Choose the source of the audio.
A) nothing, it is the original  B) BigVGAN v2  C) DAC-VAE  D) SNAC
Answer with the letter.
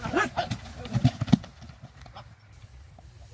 A